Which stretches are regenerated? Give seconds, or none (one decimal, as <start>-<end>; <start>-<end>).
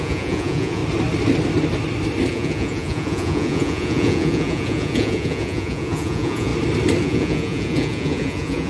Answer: 0.0-0.8; 2.3-6.5; 7.0-8.7